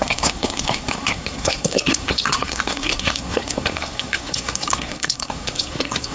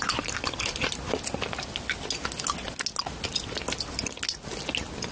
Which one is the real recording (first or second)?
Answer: second